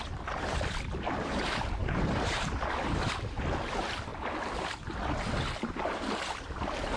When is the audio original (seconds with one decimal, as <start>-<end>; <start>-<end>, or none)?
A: 0.0-1.8; 2.6-7.0

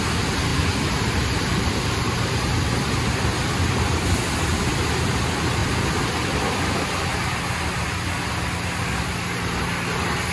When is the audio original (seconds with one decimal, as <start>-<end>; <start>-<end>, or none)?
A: 0.0-0.5; 2.2-5.6; 7.4-10.3